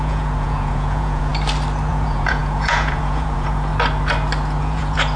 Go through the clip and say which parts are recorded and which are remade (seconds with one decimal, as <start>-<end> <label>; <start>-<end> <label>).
0.0-1.3 remade; 1.3-1.9 recorded; 1.9-3.7 remade; 3.7-4.6 recorded; 4.6-5.2 remade